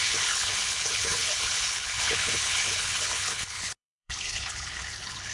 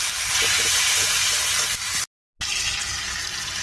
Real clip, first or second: second